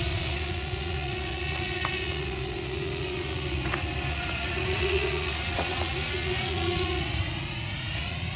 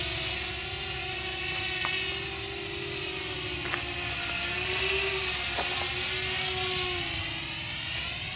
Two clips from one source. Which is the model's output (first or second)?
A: first